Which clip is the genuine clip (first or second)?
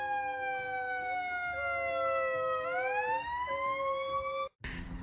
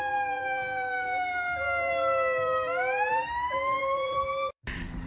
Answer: first